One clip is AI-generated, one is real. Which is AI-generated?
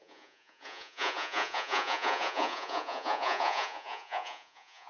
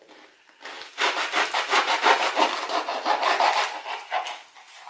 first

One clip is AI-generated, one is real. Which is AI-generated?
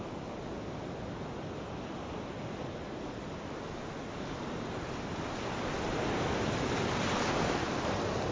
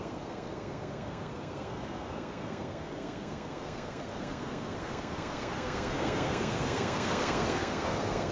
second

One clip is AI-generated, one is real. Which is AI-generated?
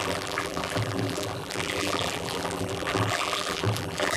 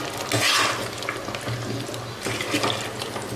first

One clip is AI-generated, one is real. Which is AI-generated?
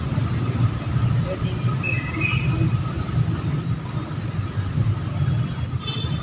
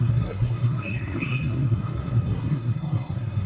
second